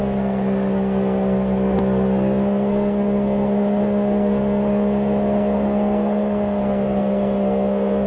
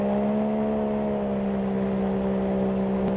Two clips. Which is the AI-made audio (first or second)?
first